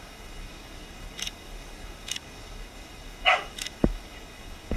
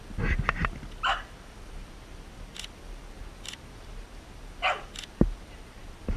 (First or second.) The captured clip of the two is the second